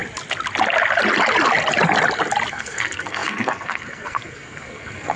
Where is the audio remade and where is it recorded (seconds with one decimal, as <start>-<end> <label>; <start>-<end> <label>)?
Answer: 0.0-2.5 recorded; 2.5-5.2 remade